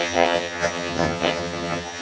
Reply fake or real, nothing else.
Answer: fake